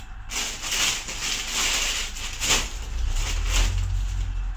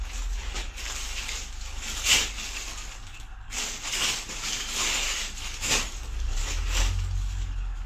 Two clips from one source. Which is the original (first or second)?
first